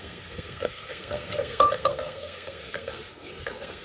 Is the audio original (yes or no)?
no